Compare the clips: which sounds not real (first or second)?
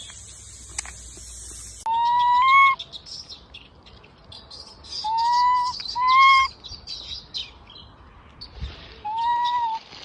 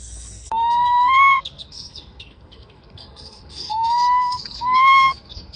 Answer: second